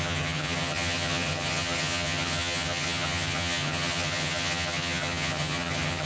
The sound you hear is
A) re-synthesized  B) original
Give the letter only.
A